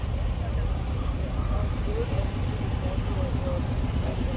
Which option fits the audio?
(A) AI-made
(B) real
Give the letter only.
B